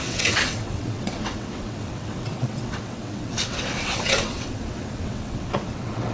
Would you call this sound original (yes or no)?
no